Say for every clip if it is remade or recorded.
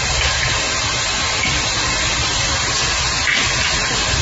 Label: recorded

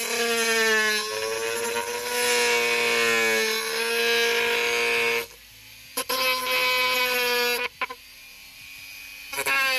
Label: recorded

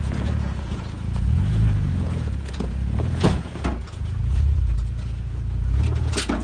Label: remade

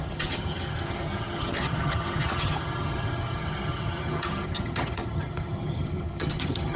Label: remade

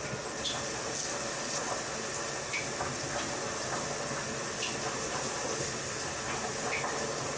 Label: recorded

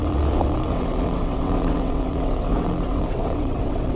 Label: remade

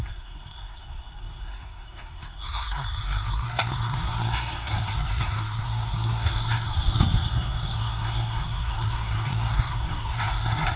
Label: remade